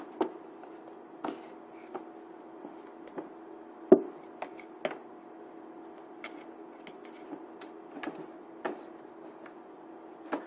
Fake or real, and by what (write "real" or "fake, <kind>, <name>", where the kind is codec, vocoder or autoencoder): real